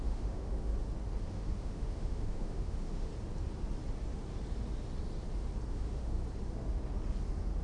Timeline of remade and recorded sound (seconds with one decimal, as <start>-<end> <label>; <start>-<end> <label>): 0.0-0.7 remade; 0.7-1.3 recorded; 1.3-3.1 remade; 3.1-5.7 recorded; 5.7-6.2 remade; 6.2-7.6 recorded